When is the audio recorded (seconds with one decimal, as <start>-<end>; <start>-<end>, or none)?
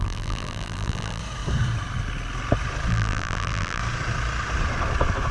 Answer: 1.2-2.9; 3.8-5.3